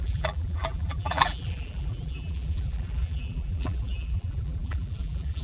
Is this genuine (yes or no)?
no